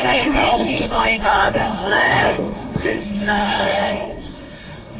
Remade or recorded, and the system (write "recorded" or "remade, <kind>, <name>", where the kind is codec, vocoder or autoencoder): remade, codec, SNAC